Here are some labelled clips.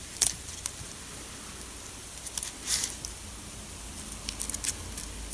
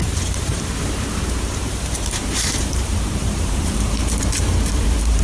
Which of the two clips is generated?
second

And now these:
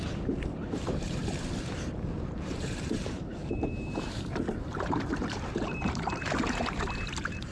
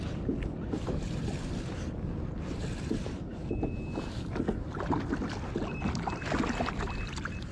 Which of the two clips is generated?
first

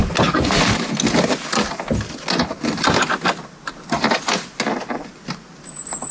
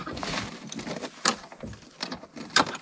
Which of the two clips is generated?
second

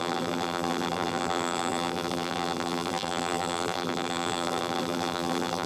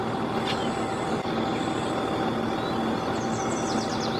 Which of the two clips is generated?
first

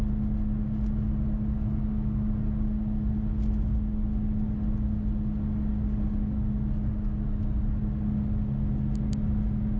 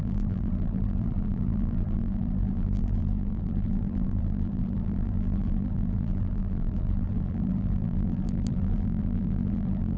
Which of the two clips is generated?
second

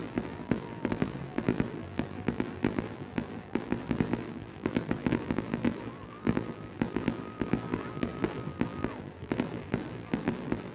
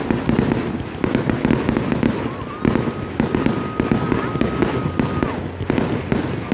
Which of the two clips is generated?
first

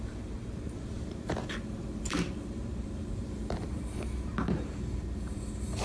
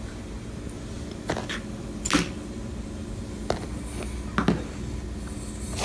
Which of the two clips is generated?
first